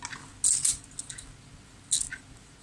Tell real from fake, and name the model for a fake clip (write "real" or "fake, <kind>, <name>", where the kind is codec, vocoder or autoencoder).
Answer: real